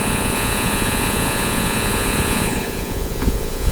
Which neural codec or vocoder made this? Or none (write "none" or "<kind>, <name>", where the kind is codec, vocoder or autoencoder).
vocoder, Vocos